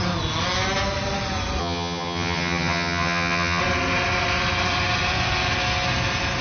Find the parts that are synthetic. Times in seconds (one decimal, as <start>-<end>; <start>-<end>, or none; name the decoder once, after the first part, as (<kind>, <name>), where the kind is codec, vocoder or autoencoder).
1.6-3.6 (vocoder, HiFi-GAN)

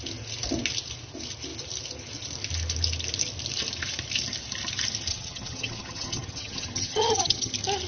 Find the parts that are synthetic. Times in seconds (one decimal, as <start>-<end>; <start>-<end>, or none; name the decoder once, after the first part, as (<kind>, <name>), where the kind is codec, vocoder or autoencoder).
5.1-7.5 (vocoder, HiFi-GAN)

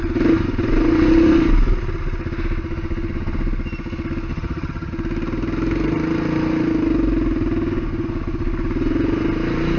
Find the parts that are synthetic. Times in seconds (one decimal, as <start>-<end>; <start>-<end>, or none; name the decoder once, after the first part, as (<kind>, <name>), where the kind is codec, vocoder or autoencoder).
4.3-4.9 (vocoder, HiFi-GAN)